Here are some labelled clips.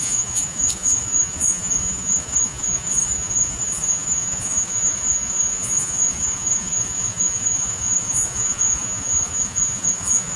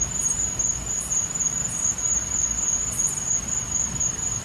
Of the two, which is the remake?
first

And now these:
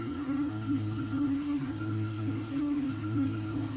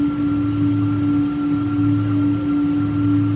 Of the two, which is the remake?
first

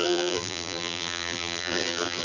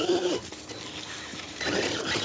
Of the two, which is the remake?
first